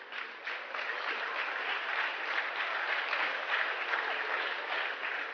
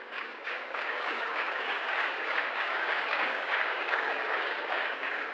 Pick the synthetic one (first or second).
second